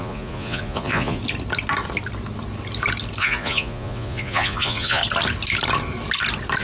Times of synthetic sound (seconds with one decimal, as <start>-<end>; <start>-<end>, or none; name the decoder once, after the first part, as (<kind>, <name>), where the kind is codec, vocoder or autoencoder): 0.0-1.2 (vocoder, Vocos); 3.2-5.0